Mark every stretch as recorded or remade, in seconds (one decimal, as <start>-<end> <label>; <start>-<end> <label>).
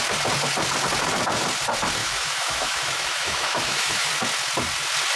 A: 0.0-2.0 recorded; 2.0-4.1 remade; 4.1-5.2 recorded